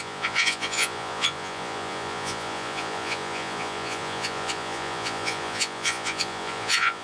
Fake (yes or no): yes